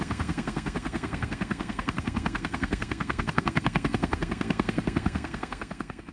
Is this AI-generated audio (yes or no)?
yes